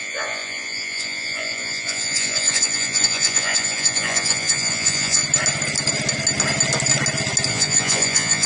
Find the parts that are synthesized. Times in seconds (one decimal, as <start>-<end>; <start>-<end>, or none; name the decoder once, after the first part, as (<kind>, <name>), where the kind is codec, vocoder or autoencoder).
0.0-5.2 (vocoder, Vocos); 7.5-8.5